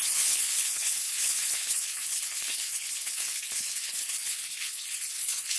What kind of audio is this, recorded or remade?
remade